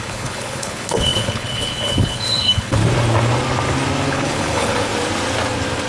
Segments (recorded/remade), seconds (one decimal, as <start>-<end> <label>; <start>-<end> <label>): 0.0-2.8 remade; 2.8-4.1 recorded; 4.1-4.9 remade; 4.9-5.9 recorded